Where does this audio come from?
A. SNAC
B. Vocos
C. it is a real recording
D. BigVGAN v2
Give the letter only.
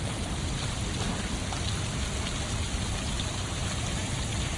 D